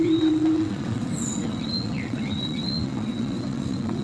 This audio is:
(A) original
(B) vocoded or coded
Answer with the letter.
B